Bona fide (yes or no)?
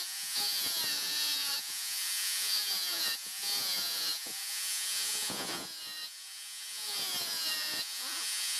no